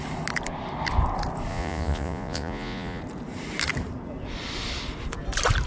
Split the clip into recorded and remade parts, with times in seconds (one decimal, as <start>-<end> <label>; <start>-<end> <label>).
0.0-1.5 recorded; 1.5-3.0 remade; 3.0-5.7 recorded